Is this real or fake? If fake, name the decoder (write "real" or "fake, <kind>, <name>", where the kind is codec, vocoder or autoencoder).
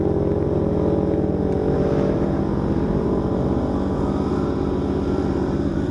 real